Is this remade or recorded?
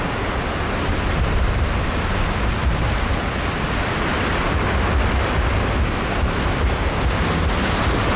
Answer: recorded